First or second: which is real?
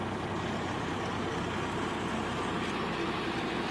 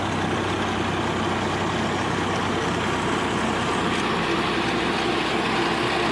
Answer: second